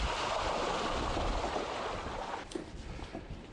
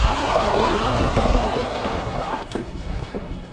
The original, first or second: first